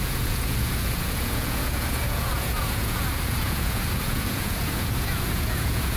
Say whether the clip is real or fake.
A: fake